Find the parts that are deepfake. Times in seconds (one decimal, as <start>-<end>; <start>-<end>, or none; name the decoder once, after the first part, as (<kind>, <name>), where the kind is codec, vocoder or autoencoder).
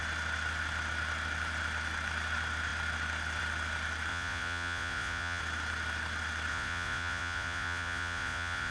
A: 4.1-5.4 (vocoder, Vocos); 6.5-8.7